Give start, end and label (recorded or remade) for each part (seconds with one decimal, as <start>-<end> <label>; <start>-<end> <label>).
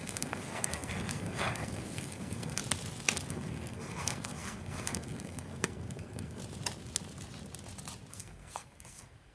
0.0-2.6 remade; 2.6-3.3 recorded; 3.3-6.4 remade; 6.4-8.1 recorded; 8.1-9.3 remade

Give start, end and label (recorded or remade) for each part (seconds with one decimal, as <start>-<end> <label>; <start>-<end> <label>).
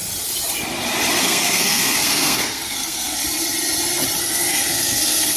0.0-1.2 recorded; 1.2-3.2 remade; 3.2-4.2 recorded; 4.2-5.4 remade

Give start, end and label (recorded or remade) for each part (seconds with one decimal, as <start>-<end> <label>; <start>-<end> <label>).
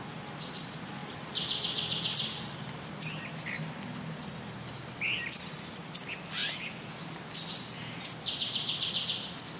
0.0-9.6 recorded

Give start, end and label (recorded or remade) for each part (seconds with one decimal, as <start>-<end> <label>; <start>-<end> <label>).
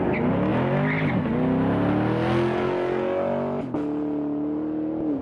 0.0-5.2 recorded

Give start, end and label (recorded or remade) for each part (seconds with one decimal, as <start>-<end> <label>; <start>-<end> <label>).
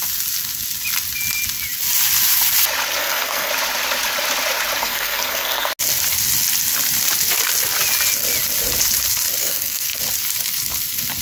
0.0-3.0 recorded; 3.0-3.5 remade; 3.5-4.8 recorded; 4.8-5.7 remade; 5.7-9.4 recorded; 9.4-10.0 remade; 10.0-11.2 recorded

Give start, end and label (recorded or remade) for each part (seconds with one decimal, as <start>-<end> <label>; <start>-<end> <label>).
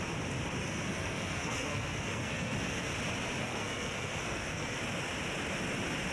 0.0-0.6 recorded; 0.6-2.9 remade; 2.9-3.4 recorded; 3.4-4.8 remade; 4.8-6.1 recorded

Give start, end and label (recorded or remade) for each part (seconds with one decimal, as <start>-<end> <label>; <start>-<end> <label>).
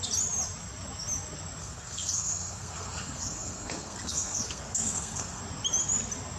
0.0-1.6 recorded; 1.6-5.4 remade; 5.4-6.4 recorded